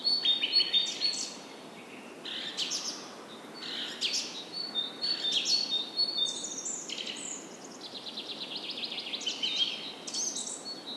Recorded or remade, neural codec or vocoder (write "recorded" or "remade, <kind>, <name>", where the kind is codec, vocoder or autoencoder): recorded